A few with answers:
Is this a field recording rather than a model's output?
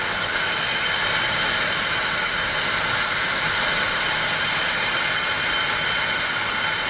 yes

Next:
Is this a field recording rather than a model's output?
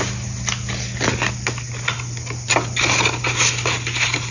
yes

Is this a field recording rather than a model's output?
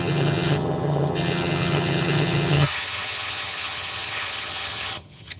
no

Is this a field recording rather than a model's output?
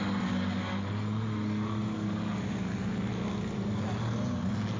yes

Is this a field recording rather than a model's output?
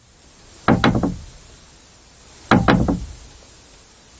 yes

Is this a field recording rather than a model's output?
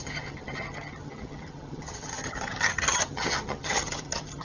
no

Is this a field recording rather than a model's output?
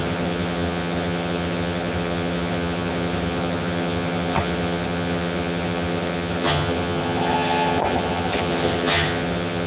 no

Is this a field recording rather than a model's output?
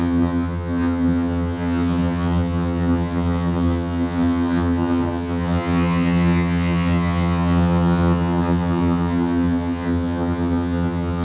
no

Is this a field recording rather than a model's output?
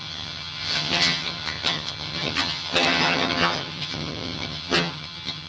no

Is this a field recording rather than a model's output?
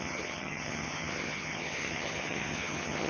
no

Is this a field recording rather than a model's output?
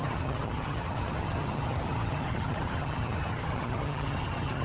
no